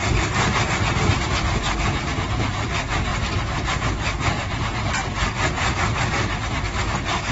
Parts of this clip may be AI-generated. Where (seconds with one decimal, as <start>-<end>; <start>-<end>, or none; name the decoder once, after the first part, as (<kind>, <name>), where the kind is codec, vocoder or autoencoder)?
none